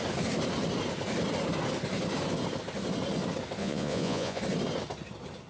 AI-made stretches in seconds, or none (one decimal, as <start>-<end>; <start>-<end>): 3.6-4.4